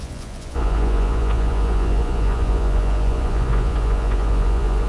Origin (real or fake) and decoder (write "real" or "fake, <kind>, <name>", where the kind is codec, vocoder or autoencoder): fake, vocoder, Vocos